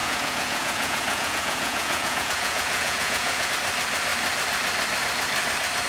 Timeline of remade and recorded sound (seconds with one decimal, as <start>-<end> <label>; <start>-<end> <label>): 0.0-3.5 remade; 3.5-5.9 recorded